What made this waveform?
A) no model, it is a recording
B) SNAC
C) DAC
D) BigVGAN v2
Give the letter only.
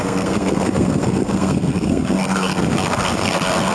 B